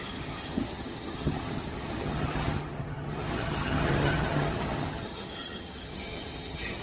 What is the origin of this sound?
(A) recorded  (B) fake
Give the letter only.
B